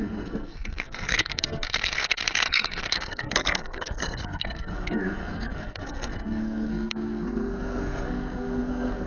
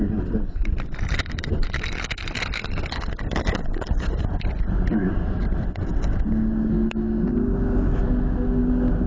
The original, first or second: second